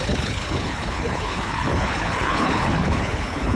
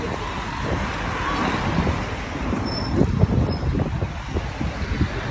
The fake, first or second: first